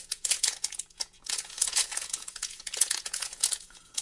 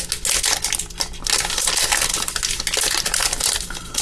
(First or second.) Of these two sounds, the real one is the second